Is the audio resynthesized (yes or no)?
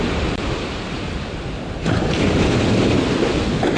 no